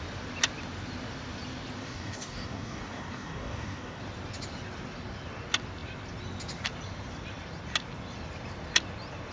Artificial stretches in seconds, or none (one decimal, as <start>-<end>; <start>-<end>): 1.8-4.0